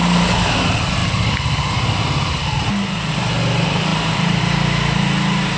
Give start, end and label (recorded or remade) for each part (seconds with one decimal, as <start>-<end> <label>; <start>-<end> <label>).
0.0-5.6 recorded